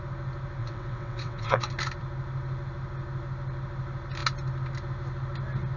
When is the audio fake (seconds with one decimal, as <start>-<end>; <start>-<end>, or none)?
0.6-1.7